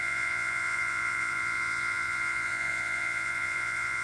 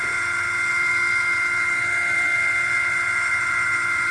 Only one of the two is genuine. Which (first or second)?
second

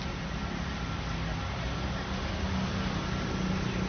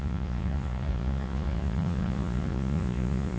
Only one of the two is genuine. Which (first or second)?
first